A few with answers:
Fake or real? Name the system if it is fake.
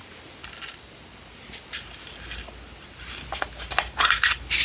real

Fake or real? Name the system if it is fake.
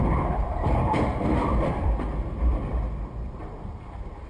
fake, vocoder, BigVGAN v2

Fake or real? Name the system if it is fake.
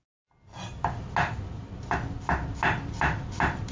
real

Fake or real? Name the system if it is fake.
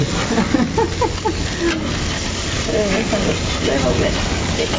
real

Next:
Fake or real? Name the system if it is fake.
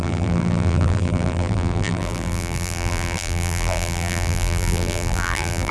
fake, vocoder, BigVGAN v2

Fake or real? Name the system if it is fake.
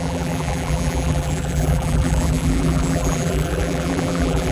fake, vocoder, BigVGAN v2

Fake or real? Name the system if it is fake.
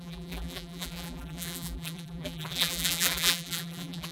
fake, vocoder, BigVGAN v2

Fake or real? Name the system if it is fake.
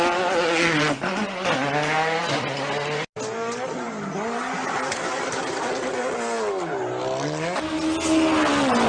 real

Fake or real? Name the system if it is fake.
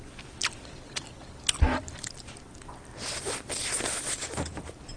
fake, vocoder, BigVGAN v2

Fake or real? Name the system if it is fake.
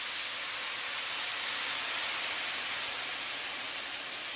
real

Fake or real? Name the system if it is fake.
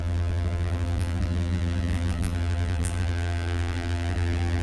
fake, vocoder, BigVGAN v2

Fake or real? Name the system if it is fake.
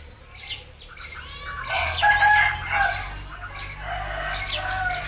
real